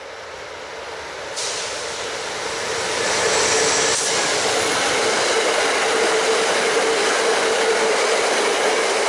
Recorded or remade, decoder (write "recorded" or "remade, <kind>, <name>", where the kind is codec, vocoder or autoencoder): remade, vocoder, BigVGAN v2